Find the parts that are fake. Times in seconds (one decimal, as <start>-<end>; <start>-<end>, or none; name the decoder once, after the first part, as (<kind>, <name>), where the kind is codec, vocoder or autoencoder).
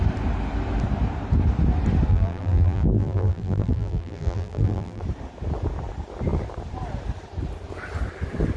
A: 2.1-5.0 (vocoder, BigVGAN v2)